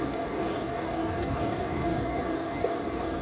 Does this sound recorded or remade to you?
remade